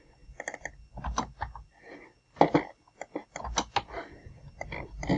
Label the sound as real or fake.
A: real